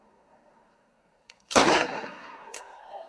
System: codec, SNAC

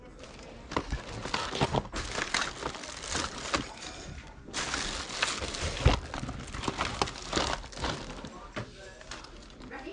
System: none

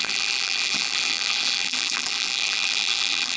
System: vocoder, BigVGAN v2